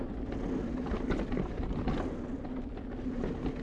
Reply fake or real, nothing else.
real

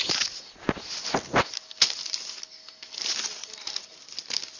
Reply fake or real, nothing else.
real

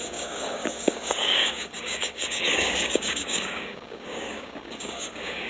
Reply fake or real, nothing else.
fake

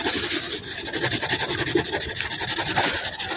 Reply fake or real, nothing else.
real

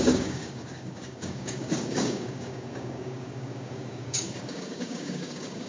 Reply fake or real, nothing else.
fake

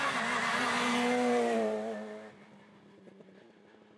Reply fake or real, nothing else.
real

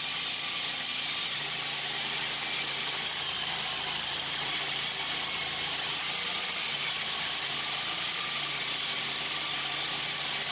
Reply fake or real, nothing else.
real